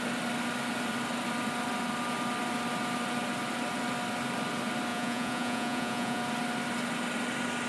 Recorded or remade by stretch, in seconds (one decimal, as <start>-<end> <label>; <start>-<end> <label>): 0.0-4.9 recorded; 4.9-6.2 remade; 6.2-7.7 recorded